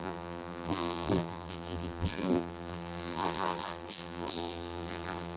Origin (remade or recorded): remade